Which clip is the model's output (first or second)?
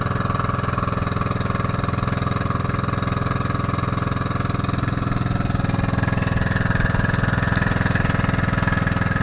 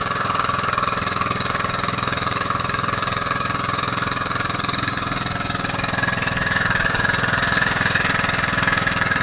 second